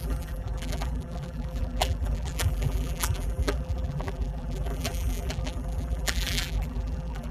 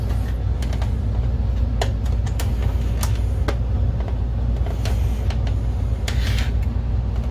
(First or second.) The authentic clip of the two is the second